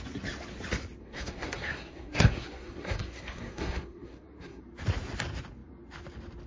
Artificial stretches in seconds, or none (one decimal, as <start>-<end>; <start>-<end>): 1.0-4.6